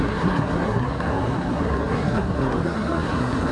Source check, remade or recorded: remade